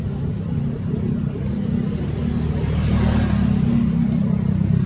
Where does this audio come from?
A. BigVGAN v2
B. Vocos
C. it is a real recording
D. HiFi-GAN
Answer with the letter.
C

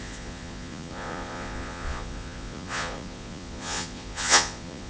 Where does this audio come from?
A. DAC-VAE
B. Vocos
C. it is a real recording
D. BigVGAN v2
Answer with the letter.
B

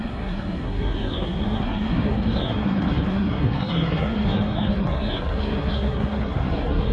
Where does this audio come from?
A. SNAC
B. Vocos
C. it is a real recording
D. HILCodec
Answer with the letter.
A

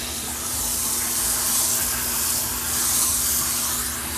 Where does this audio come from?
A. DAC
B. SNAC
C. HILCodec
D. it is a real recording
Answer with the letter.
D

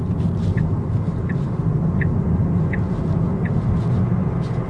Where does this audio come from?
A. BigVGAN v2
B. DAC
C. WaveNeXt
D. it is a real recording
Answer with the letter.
D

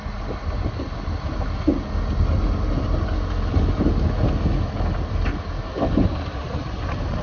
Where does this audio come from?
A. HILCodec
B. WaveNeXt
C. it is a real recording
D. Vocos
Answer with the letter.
C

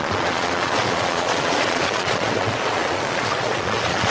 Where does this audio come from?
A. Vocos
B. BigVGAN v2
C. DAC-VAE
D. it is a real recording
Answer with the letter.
A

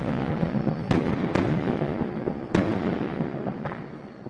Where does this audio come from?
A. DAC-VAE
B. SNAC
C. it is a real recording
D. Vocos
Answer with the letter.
D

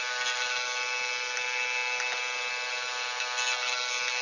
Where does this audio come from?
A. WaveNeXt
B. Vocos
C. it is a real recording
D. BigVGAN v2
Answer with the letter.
C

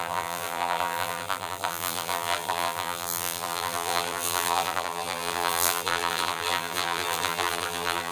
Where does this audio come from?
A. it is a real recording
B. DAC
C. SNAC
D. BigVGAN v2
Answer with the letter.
D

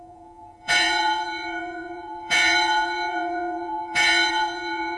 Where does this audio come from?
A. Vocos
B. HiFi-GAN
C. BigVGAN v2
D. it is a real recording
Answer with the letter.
A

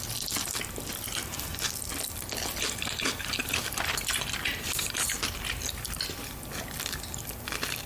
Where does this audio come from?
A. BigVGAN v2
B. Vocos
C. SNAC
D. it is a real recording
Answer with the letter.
D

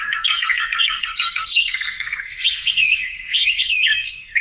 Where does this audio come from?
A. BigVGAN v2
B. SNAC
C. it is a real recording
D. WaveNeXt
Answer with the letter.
B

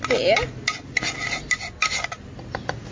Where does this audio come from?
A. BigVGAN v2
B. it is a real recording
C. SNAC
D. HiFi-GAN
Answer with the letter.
B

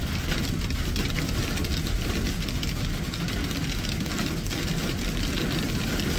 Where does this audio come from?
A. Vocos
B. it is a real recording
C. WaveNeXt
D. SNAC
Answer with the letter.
B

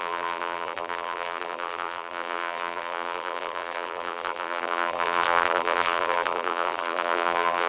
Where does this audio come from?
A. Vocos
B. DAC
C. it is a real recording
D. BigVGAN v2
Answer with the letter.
D